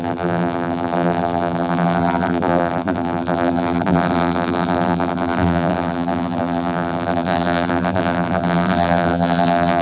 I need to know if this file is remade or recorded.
remade